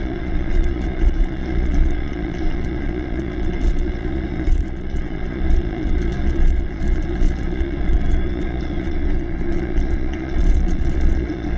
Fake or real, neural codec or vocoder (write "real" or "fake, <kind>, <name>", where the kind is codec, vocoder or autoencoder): fake, vocoder, Vocos